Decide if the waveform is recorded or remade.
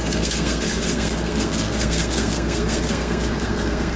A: remade